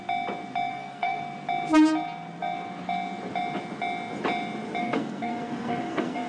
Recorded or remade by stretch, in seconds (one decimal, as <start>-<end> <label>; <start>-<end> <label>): 0.0-0.7 recorded; 0.7-1.2 remade; 1.2-4.8 recorded; 4.8-6.3 remade